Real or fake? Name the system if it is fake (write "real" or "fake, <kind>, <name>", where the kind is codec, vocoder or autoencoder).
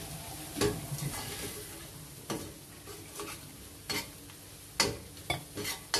real